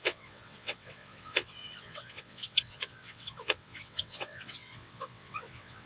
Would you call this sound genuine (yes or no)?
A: no